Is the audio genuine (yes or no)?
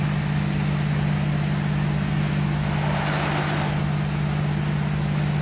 yes